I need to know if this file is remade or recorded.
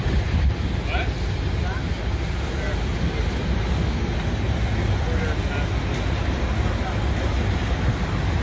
recorded